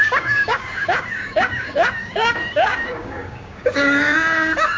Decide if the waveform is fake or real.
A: fake